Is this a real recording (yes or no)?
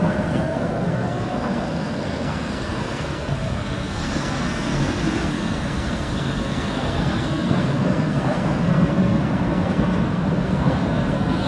no